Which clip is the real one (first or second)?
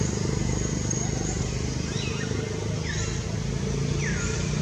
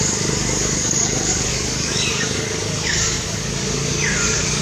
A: first